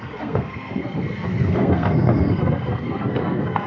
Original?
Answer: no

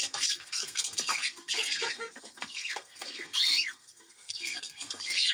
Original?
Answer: no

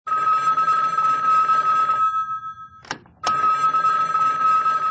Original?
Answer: yes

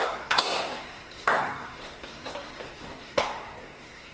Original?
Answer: no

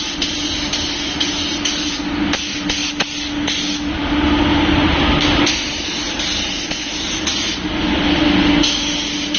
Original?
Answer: yes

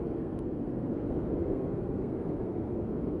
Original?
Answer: no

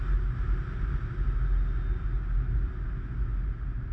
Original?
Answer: yes